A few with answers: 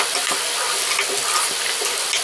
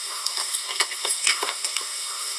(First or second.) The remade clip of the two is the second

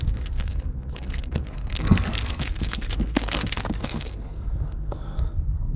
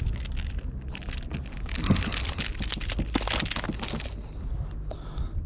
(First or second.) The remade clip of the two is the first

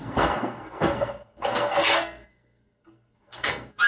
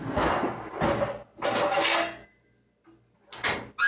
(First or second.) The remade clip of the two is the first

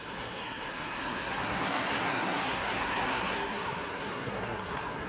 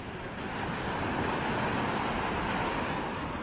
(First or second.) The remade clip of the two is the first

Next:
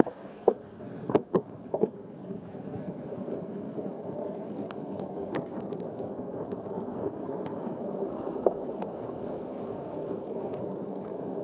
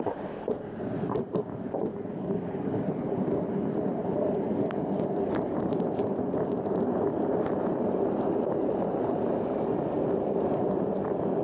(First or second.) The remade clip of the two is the first